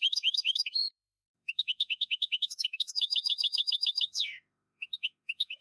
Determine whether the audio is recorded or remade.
remade